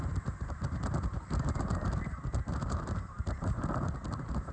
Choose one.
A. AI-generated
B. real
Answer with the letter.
A